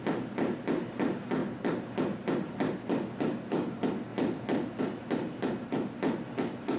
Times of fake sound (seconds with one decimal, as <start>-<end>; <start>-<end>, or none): none